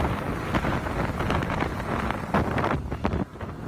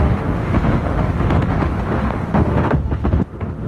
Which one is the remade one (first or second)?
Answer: second